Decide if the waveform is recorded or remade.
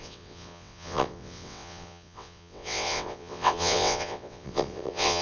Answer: remade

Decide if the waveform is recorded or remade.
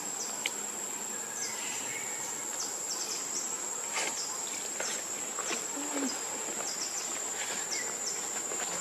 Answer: recorded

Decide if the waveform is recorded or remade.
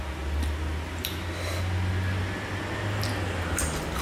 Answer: recorded